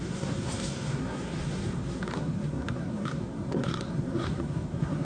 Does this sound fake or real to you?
fake